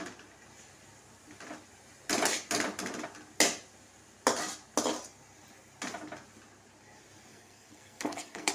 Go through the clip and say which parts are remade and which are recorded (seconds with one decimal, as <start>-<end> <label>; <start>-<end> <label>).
0.0-7.3 recorded; 7.3-8.5 remade